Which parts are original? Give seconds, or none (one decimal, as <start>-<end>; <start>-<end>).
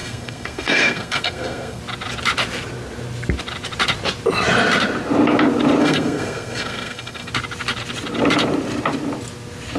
1.8-5.8; 7.3-9.8